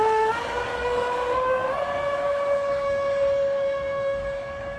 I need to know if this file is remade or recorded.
remade